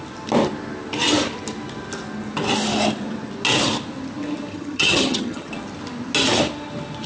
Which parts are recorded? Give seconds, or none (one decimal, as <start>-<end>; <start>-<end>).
0.0-4.5; 5.5-7.1